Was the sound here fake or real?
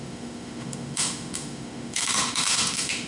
fake